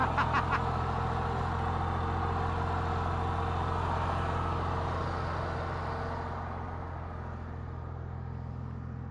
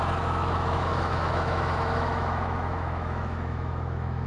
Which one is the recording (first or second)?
first